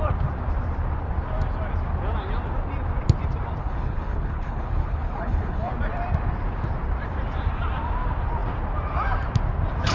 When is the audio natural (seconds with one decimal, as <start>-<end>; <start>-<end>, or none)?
0.0-3.6; 5.7-9.9